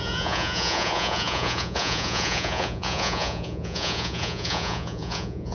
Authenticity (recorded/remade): remade